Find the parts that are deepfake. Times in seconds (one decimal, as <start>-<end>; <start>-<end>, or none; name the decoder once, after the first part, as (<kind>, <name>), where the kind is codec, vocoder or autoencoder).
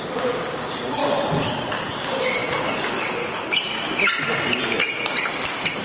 0.0-1.0 (codec, DAC); 1.5-2.4